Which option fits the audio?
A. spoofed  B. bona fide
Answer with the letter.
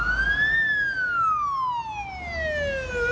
B